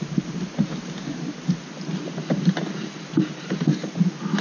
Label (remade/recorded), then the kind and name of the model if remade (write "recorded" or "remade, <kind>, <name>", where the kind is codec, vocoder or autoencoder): recorded